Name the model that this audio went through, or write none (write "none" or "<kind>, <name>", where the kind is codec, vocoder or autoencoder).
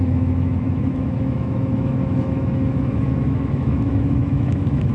autoencoder, DAC-VAE